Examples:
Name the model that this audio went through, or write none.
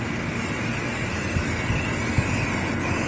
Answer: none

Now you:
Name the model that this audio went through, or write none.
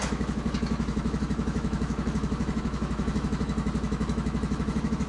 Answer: autoencoder, DAC-VAE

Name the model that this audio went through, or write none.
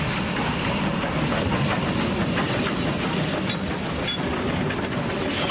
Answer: none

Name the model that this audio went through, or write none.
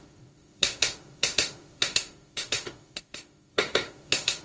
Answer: autoencoder, DAC-VAE